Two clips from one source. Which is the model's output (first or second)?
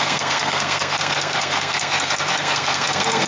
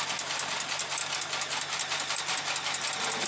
first